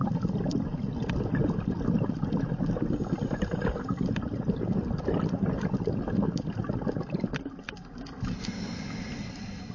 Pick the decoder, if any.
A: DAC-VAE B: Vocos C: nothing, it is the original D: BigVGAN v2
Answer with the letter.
C